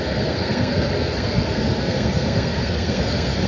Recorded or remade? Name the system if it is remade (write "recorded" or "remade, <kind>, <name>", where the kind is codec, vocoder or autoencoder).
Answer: remade, codec, SNAC